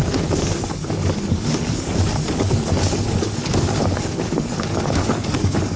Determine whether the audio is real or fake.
fake